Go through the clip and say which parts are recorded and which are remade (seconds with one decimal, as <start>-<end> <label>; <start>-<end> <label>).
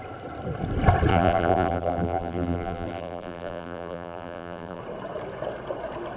0.0-1.1 recorded; 1.1-4.8 remade; 4.8-6.2 recorded